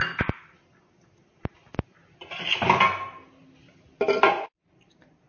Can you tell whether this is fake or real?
real